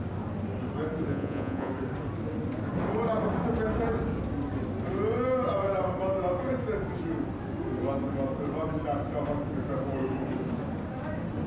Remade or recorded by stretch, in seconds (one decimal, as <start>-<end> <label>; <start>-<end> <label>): 0.0-1.1 recorded; 1.1-1.7 remade; 1.7-11.5 recorded